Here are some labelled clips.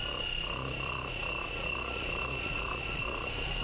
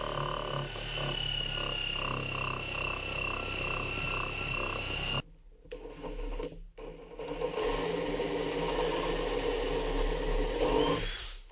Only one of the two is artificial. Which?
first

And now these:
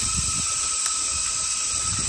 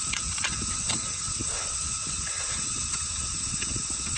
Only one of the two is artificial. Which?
second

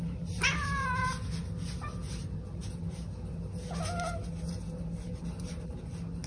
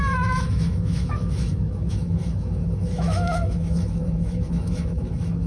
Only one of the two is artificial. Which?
second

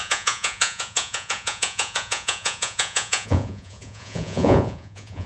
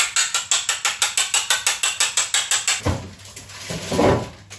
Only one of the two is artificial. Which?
first